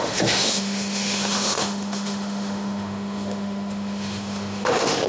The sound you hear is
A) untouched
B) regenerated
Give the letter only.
B